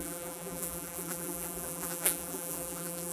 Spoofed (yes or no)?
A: yes